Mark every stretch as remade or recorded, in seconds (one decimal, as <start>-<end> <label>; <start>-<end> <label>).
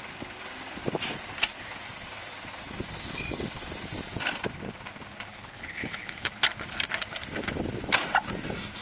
0.0-5.3 recorded; 5.3-6.3 remade; 6.3-8.8 recorded